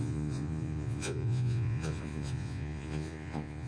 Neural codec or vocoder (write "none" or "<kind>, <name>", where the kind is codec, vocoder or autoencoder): vocoder, Vocos